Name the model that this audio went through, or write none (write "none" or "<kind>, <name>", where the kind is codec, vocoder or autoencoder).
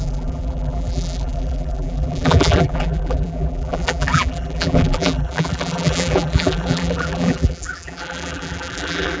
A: vocoder, BigVGAN v2